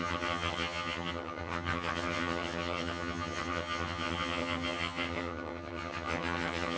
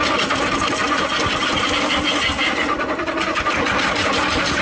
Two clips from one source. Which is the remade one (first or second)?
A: first